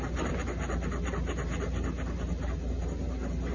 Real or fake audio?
real